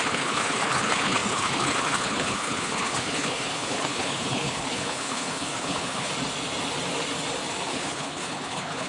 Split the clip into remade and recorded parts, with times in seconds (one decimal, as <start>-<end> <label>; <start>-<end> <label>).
0.0-6.1 remade; 6.1-7.7 recorded; 7.7-8.9 remade